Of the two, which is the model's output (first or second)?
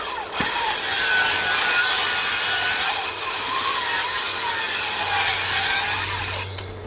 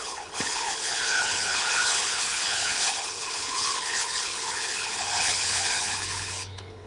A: second